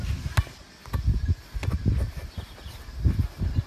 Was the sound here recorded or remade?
recorded